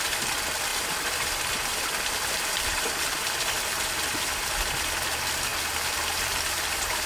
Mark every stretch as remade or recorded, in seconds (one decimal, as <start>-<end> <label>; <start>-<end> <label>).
0.0-0.7 recorded; 0.7-4.5 remade; 4.5-5.5 recorded; 5.5-7.1 remade